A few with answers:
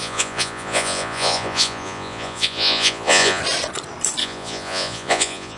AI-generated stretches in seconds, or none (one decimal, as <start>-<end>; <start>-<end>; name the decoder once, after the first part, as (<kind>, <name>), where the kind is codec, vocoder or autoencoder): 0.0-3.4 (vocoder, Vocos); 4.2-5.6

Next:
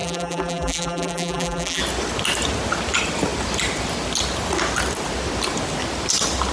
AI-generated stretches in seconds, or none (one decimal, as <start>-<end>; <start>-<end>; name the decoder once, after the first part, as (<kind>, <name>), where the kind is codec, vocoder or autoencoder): 0.0-1.8 (vocoder, BigVGAN v2)

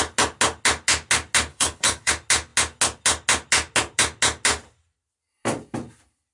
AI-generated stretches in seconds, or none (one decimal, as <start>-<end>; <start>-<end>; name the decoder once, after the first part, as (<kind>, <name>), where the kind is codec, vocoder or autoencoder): 1.5-2.1 (codec, HILCodec)